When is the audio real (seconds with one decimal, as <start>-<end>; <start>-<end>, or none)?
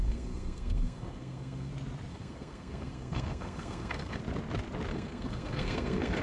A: 1.7-2.1; 4.2-4.9